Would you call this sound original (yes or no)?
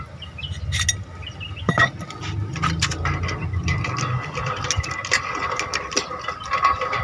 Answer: yes